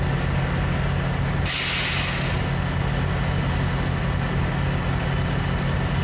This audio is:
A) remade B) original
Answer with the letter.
B